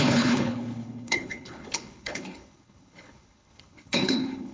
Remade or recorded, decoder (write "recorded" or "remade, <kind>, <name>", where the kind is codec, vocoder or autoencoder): remade, codec, HILCodec